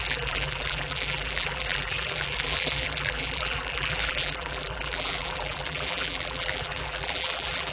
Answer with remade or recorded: remade